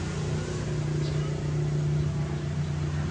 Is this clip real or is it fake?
real